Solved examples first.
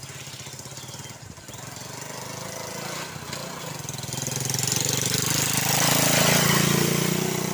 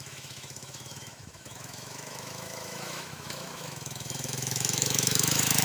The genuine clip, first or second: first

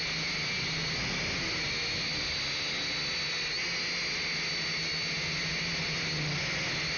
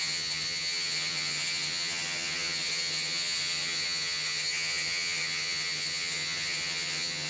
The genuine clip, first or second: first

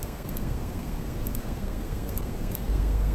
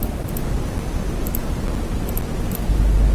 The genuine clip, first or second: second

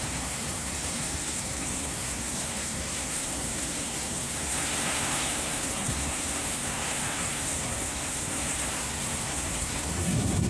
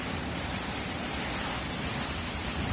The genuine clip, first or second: second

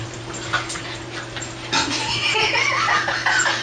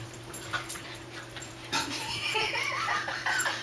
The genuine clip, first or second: first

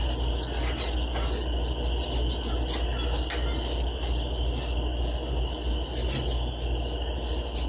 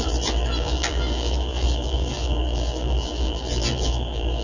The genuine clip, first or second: first